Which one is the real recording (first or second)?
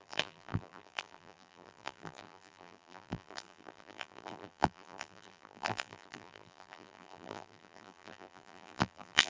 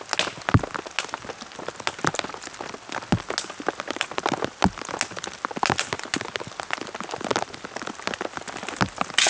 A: second